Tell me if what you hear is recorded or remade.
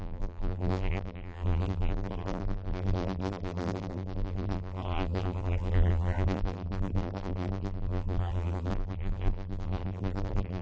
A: remade